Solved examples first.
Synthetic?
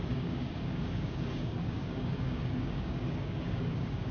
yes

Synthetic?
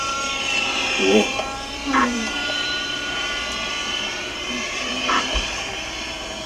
yes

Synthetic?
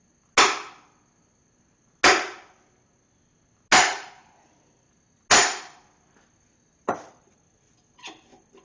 no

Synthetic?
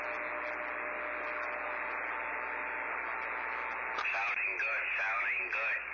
no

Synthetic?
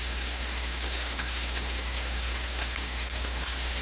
yes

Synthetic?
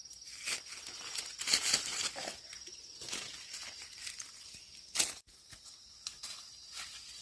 no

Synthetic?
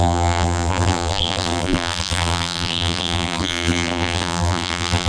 yes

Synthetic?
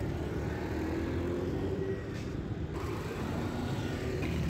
yes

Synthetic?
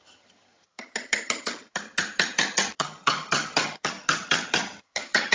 yes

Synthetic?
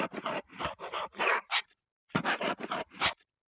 yes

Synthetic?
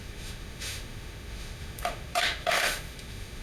yes